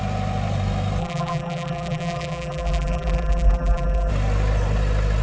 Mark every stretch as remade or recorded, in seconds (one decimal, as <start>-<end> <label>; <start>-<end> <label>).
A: 0.0-1.0 recorded; 1.0-4.1 remade; 4.1-5.2 recorded